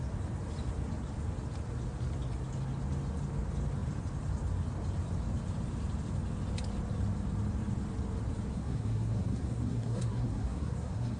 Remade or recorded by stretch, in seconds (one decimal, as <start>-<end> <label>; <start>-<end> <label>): 0.0-8.5 recorded; 8.5-11.2 remade